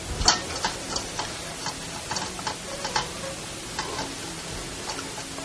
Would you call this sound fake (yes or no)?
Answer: no